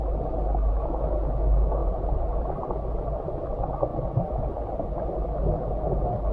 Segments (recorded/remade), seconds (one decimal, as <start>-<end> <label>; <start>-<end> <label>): 0.0-1.8 recorded; 1.8-2.5 remade; 2.5-6.3 recorded